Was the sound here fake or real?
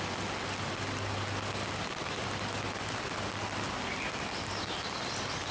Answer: real